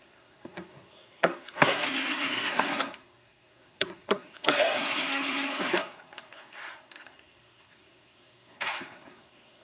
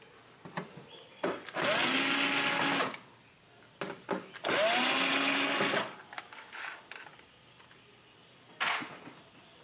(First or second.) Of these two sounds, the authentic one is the second